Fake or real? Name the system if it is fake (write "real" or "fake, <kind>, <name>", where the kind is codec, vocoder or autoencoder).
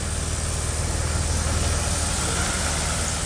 real